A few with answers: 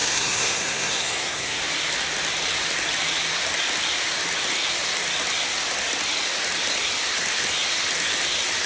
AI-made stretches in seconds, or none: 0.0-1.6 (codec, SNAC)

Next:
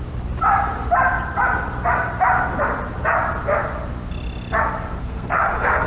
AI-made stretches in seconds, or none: 5.0-5.9 (codec, SNAC)

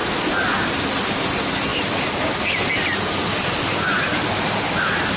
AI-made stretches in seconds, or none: none

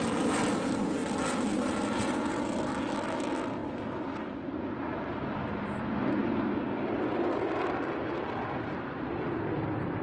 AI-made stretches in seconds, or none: none